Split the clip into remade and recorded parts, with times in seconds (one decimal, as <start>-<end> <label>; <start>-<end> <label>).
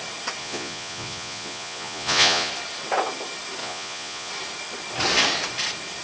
0.0-0.4 recorded; 0.4-2.5 remade; 2.5-3.6 recorded; 3.6-4.3 remade; 4.3-6.0 recorded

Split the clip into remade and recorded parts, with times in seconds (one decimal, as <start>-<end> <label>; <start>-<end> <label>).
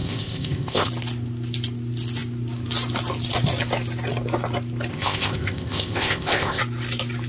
0.0-0.9 remade; 0.9-4.9 recorded; 4.9-6.6 remade; 6.6-7.3 recorded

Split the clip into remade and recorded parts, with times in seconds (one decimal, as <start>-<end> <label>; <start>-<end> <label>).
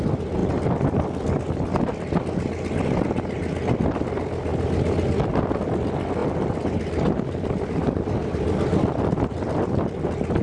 0.0-6.2 recorded; 6.2-10.0 remade; 10.0-10.4 recorded